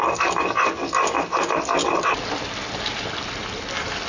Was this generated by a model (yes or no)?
no